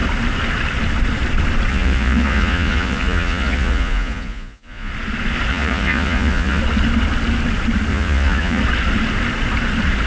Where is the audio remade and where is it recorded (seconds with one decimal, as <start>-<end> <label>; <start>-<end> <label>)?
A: 0.0-1.7 recorded; 1.7-4.9 remade; 4.9-5.5 recorded; 5.5-6.6 remade; 6.6-7.9 recorded; 7.9-8.6 remade; 8.6-10.1 recorded